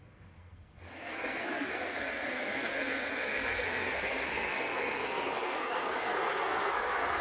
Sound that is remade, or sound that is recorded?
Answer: remade